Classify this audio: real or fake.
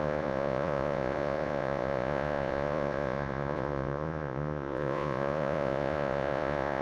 fake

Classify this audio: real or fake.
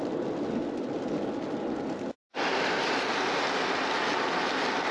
real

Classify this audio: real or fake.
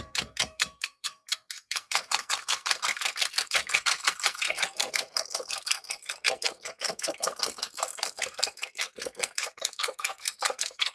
fake